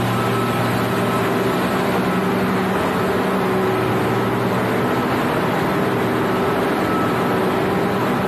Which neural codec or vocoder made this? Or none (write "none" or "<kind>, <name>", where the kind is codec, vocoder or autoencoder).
none